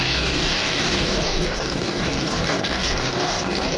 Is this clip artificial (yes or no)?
yes